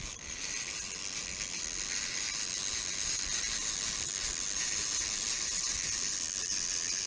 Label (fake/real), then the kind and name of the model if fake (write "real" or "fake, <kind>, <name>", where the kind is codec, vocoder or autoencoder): real